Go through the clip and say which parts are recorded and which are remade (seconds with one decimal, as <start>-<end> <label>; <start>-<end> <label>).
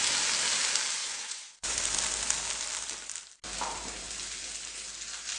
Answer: 0.0-1.0 recorded; 1.0-1.8 remade; 1.8-5.4 recorded